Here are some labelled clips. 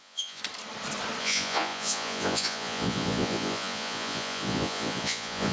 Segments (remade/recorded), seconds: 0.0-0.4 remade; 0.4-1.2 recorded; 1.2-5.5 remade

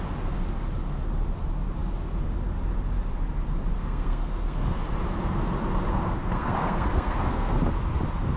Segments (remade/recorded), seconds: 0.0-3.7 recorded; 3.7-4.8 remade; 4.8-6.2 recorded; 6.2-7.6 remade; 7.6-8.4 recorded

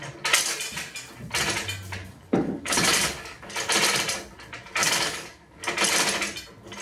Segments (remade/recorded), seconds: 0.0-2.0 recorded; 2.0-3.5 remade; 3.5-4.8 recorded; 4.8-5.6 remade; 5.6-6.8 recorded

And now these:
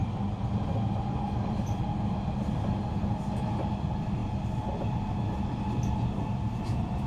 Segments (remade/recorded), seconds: 0.0-7.1 recorded